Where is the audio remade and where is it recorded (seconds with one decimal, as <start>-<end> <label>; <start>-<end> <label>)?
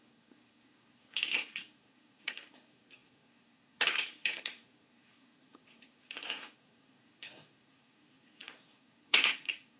0.0-9.8 remade